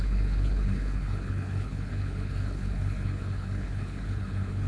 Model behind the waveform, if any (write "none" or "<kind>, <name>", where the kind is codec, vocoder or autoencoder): codec, HILCodec